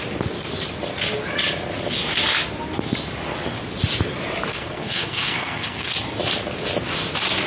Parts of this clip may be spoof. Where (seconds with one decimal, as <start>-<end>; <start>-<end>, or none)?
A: 4.5-5.9